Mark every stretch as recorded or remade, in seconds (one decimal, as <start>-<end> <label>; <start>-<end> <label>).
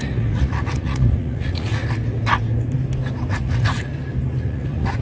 0.0-1.8 remade; 1.8-3.3 recorded; 3.3-3.9 remade; 3.9-4.4 recorded; 4.4-5.0 remade